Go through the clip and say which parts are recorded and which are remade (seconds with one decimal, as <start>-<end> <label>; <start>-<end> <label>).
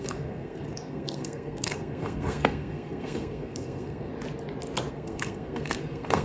0.0-4.1 remade; 4.1-4.9 recorded; 4.9-6.2 remade